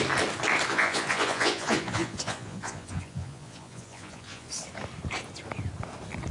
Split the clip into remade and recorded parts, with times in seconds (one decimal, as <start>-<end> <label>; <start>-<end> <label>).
0.0-0.7 recorded; 0.7-4.5 remade; 4.5-6.3 recorded